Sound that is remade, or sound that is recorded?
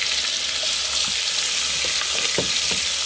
recorded